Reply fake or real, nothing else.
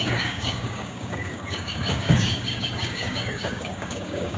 fake